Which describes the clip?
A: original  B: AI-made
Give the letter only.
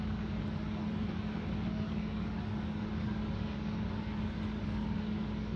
B